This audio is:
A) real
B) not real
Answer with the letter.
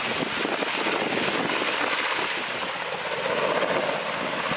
A